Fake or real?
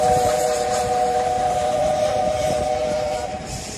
fake